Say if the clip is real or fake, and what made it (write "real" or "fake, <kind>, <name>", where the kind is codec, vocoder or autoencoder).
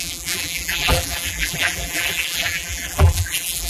fake, vocoder, BigVGAN v2